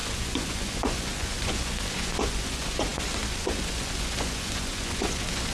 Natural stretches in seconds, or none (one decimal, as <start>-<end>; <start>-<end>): none